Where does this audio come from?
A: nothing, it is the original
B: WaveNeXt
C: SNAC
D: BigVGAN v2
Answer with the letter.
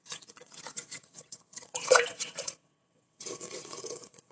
B